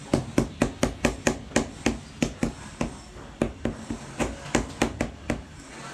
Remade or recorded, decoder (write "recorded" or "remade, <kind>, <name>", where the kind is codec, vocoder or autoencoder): recorded